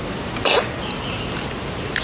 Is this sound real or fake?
real